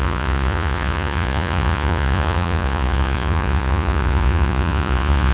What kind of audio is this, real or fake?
fake